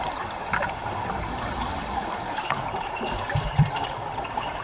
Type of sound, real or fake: fake